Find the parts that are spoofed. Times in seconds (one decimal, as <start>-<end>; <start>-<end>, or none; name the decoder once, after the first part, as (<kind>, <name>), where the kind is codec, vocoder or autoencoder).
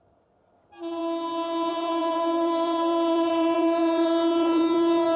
0.0-1.0 (vocoder, BigVGAN v2); 1.7-5.2